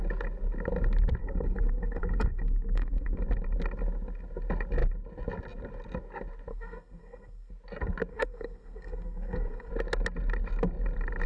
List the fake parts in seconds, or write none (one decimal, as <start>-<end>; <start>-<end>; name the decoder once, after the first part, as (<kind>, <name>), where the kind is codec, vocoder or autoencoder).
1.2-3.2 (codec, SNAC); 6.5-7.5; 8.1-9.7